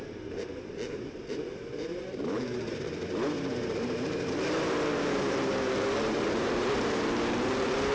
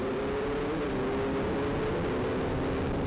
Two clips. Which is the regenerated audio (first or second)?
first